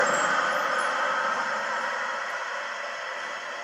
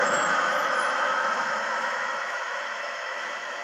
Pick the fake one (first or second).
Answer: second